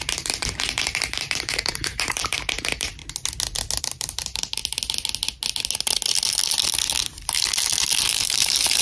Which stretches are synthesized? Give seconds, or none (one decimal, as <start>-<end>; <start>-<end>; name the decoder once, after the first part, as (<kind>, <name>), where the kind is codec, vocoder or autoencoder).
0.0-3.0 (vocoder, BigVGAN v2); 3.8-4.6; 8.1-8.8